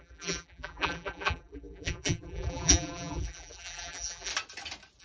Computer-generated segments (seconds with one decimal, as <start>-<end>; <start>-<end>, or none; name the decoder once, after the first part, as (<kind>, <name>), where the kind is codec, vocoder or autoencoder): 0.0-4.3 (vocoder, BigVGAN v2)